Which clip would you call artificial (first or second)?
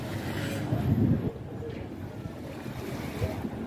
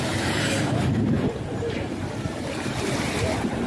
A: second